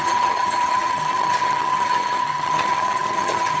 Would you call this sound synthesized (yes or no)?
yes